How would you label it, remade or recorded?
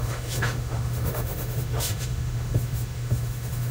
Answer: remade